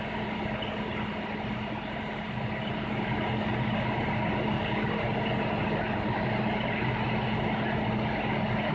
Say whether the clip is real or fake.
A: real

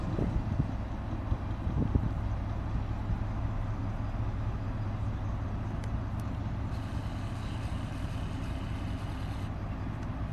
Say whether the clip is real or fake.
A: real